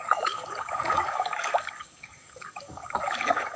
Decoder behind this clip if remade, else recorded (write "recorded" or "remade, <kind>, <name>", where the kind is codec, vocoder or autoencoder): remade, codec, DAC